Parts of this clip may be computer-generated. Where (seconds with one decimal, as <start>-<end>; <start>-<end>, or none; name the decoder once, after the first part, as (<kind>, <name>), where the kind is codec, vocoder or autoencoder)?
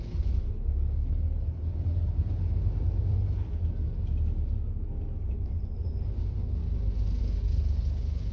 0.0-2.6 (codec, HILCodec); 3.1-3.6; 5.2-6.6; 7.2-8.3